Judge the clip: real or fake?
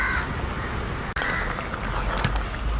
real